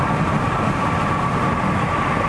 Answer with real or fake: real